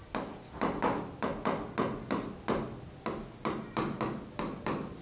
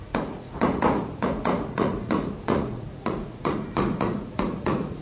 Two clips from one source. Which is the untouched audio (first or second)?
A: first